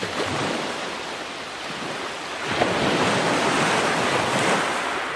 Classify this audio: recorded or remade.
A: remade